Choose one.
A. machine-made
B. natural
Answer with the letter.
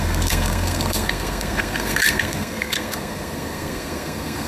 A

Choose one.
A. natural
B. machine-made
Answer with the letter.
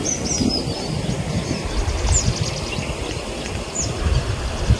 A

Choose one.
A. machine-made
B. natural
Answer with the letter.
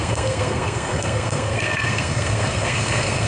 A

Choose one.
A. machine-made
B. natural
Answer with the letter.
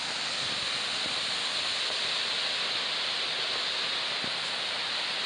B